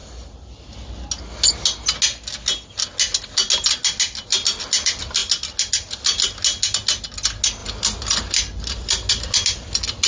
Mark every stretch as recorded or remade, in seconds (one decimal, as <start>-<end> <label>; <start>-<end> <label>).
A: 0.0-10.1 recorded